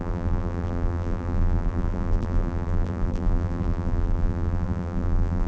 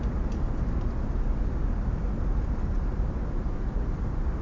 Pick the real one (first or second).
second